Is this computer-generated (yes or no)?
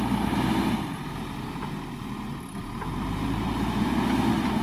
no